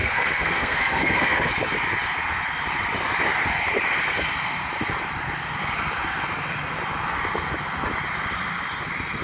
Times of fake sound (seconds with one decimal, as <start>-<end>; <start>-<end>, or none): 0.0-1.5